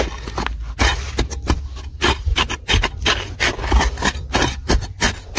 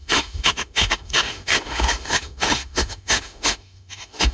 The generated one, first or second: second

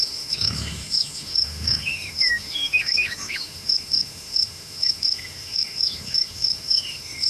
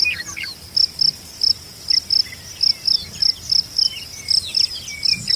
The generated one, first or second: first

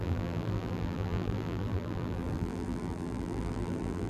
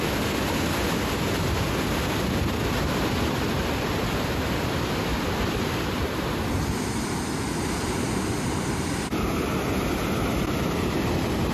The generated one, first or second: first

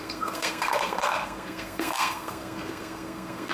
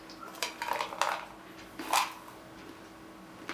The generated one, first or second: first